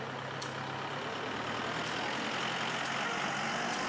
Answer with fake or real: real